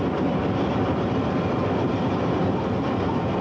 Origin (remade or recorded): recorded